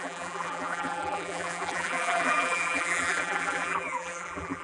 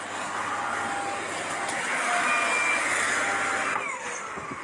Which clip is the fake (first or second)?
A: first